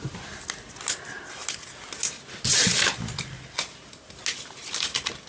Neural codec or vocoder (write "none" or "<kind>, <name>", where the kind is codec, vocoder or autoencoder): none